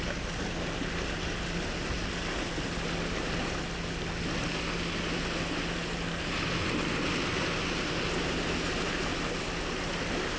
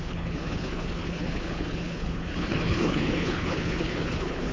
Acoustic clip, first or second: first